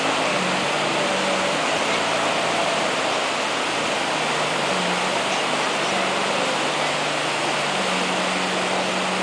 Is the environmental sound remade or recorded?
recorded